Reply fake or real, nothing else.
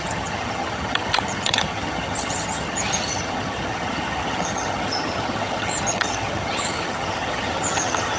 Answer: fake